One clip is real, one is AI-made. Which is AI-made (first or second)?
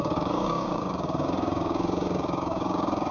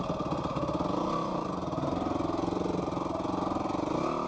first